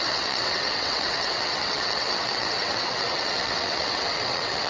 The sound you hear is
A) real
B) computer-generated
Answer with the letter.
B